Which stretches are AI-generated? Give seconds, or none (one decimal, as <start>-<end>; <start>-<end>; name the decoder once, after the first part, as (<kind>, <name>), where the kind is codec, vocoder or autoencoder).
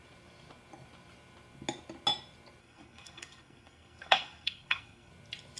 2.6-5.1 (codec, SNAC)